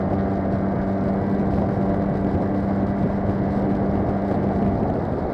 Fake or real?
real